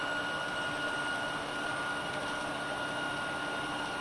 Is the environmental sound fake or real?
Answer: real